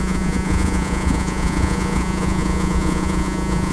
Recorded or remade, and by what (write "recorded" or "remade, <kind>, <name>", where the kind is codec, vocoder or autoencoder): remade, vocoder, Vocos